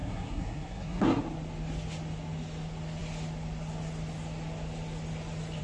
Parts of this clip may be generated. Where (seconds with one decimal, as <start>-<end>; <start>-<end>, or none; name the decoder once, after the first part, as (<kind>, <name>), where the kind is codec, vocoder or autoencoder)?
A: 0.0-1.2 (codec, SNAC)